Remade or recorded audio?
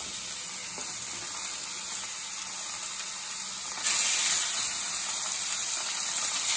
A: recorded